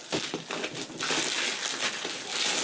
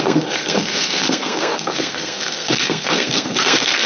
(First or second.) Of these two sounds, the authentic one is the first